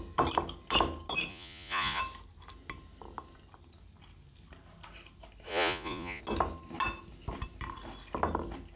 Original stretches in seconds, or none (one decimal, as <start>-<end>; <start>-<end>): 0.0-1.3; 2.0-5.5; 6.2-8.8